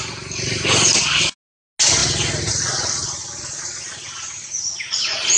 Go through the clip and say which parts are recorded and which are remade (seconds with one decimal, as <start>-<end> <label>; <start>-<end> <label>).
0.0-5.4 recorded